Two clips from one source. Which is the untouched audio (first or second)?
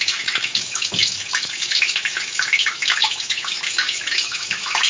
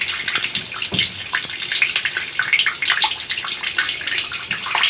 second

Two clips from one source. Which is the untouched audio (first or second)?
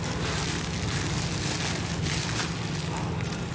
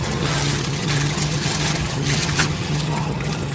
first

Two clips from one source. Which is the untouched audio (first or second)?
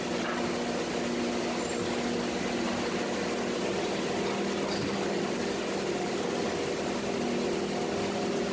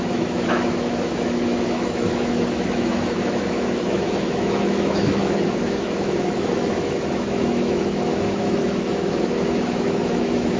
first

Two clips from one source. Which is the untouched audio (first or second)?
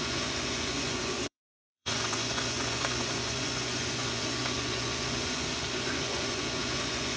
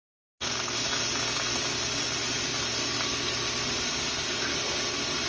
second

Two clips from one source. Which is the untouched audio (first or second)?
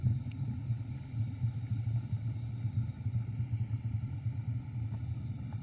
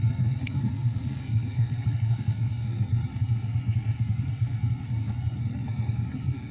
first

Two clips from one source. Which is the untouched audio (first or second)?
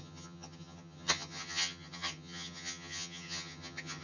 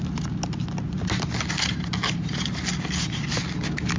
second